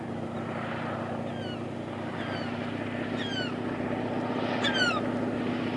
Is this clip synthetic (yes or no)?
no